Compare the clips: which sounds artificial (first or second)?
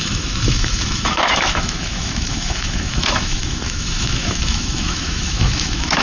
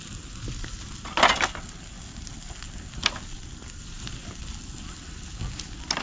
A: first